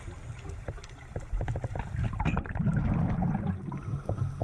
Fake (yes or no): no